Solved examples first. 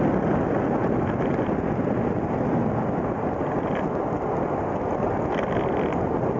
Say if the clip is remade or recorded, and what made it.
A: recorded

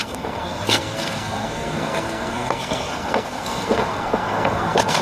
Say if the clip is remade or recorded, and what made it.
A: remade, codec, SNAC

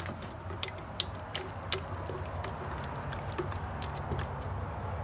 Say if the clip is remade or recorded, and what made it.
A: recorded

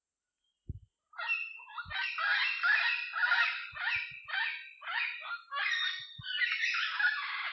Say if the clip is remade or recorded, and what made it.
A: recorded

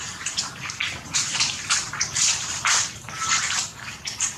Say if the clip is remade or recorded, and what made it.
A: remade, vocoder, BigVGAN v2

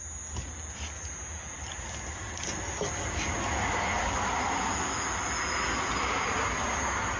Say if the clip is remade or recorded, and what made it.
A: recorded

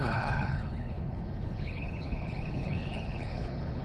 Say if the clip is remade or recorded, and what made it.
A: remade, codec, HILCodec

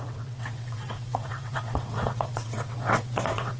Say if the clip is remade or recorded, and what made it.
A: remade, vocoder, WaveNeXt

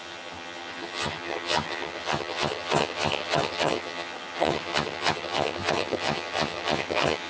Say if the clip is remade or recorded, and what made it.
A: remade, vocoder, HiFi-GAN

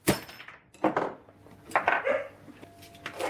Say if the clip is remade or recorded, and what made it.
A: recorded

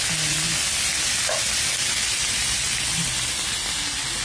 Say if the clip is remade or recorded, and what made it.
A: recorded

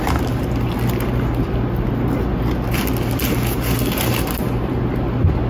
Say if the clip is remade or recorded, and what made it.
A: recorded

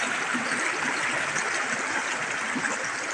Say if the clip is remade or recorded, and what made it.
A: recorded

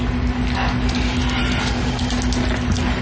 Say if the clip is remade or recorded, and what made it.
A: recorded